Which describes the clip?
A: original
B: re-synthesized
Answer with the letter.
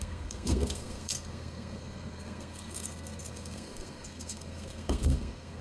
B